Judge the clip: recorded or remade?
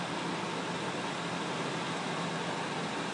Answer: recorded